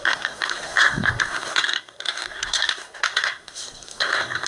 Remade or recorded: remade